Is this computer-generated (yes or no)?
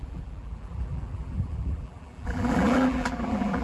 yes